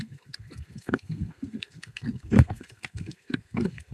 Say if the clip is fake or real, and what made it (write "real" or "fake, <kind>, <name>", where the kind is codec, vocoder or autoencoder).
fake, codec, SNAC